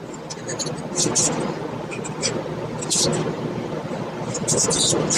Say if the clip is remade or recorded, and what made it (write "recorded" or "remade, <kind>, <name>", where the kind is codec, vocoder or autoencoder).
recorded